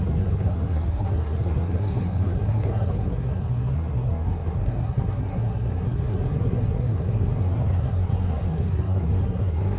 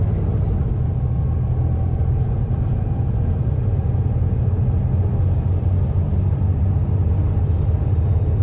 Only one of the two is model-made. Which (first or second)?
first